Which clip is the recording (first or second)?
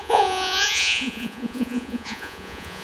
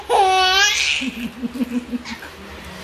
second